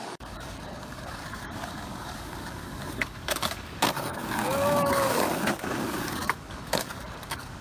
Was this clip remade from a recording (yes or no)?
yes